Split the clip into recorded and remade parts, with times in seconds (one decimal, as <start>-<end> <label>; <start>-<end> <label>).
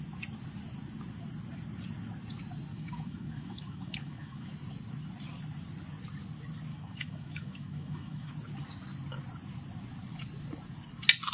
0.0-2.7 recorded; 2.7-4.5 remade; 4.5-6.7 recorded; 6.7-8.3 remade; 8.3-11.3 recorded